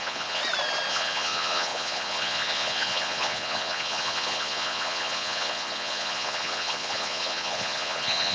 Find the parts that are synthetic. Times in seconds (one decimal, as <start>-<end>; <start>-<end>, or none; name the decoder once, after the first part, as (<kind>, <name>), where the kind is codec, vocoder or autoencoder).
0.0-0.4 (vocoder, Vocos); 0.9-8.3